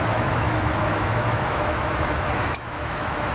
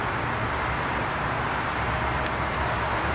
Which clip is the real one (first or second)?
second